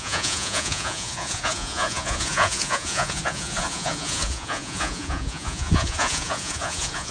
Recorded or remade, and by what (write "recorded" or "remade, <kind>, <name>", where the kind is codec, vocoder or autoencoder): remade, vocoder, Vocos